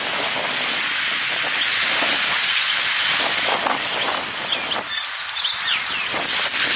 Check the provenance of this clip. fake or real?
real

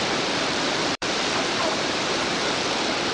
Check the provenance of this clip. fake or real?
fake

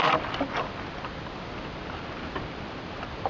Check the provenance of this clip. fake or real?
real